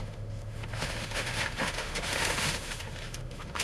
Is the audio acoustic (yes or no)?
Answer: no